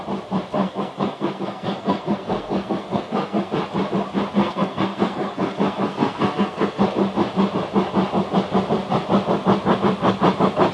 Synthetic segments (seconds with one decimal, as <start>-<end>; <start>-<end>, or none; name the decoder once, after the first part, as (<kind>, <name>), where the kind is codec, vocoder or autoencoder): 0.6-3.5 (codec, SNAC); 4.4-6.8